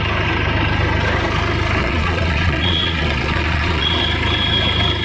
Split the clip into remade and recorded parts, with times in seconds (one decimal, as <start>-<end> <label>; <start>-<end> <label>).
0.0-1.8 recorded; 1.8-4.0 remade; 4.0-5.0 recorded